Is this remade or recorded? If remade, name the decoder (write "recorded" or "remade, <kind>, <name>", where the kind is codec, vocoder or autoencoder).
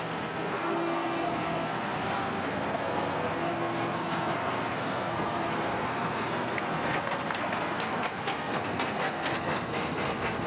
remade, codec, SNAC